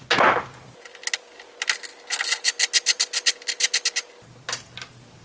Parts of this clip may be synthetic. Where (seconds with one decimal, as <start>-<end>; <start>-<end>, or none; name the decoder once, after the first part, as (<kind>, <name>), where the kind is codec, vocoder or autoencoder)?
none